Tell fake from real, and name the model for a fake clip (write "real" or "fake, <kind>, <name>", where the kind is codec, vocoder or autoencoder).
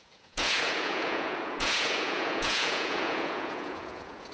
fake, vocoder, Vocos